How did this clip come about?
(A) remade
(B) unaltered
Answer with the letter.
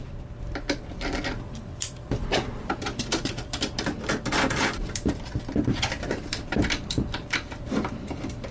A